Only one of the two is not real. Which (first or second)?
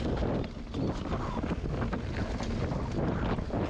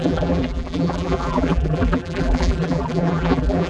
second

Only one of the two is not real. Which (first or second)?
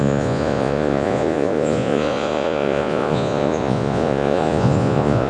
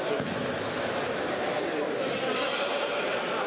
first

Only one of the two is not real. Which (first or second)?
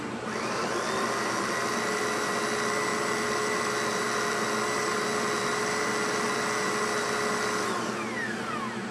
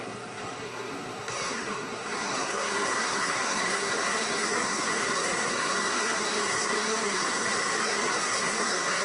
second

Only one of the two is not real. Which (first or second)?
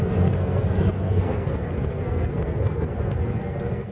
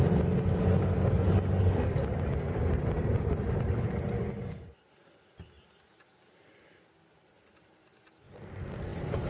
first